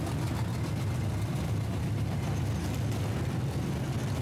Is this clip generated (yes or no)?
no